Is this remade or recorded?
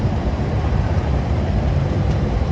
remade